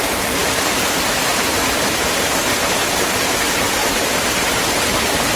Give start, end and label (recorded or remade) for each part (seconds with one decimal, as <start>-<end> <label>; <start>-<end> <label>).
0.0-0.4 recorded; 0.4-1.6 remade; 1.6-3.8 recorded; 3.8-4.8 remade; 4.8-5.4 recorded

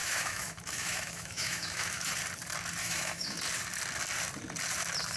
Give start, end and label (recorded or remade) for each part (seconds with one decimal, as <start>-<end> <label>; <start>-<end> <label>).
0.0-2.1 remade; 2.1-2.8 recorded; 2.8-3.4 remade; 3.4-5.2 recorded

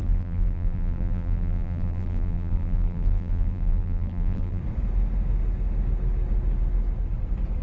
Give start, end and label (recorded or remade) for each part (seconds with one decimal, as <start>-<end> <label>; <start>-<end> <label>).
0.0-4.6 remade; 4.6-7.6 recorded